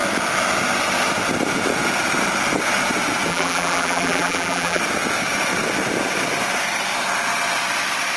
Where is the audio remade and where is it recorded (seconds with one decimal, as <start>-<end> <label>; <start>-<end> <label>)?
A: 0.0-3.3 recorded; 3.3-4.8 remade; 4.8-8.2 recorded